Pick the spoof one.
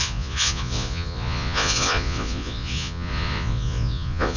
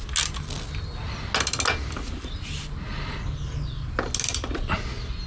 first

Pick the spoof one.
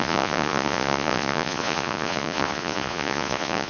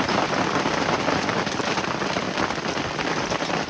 first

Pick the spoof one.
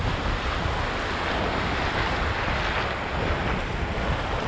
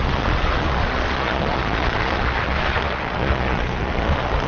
second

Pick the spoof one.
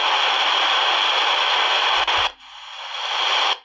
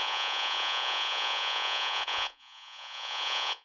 second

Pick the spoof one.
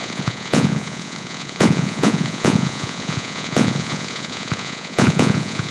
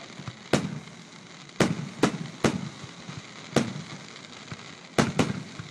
first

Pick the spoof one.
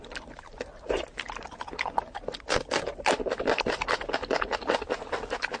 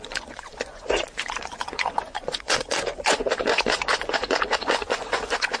second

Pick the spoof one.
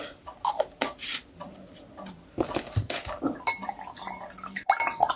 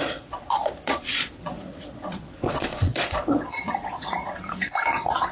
second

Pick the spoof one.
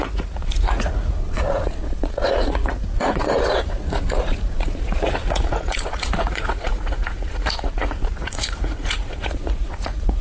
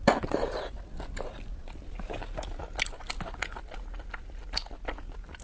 first